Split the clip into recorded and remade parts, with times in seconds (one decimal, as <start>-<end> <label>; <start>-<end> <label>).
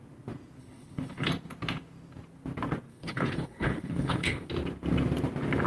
0.0-0.6 recorded; 0.6-1.3 remade; 1.3-2.9 recorded; 2.9-4.5 remade; 4.5-5.7 recorded